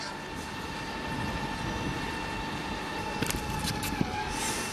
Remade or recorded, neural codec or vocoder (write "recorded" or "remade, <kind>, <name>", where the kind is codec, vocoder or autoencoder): recorded